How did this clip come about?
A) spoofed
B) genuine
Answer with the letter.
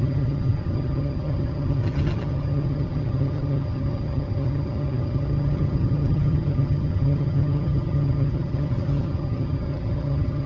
A